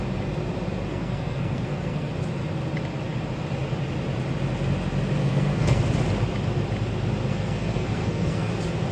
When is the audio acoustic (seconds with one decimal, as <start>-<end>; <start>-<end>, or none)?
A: 0.0-0.9; 2.1-5.2; 5.8-7.3; 8.5-8.9

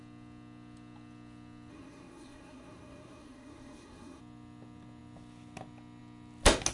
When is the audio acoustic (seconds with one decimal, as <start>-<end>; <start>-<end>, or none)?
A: 0.0-1.7; 4.2-6.7

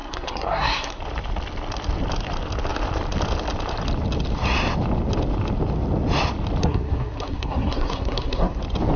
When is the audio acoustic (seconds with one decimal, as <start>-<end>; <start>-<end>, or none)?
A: 1.0-6.6; 8.6-9.0

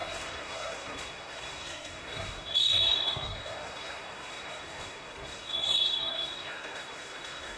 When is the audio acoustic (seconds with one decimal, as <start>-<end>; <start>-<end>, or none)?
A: none